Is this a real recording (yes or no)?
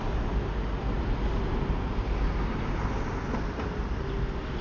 yes